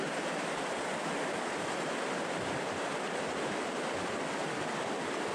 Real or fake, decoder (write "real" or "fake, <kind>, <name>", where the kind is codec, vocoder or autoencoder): real